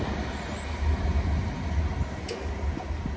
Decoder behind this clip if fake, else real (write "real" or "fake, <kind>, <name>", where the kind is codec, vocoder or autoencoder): real